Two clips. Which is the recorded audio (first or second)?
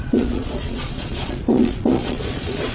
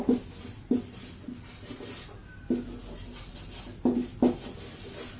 second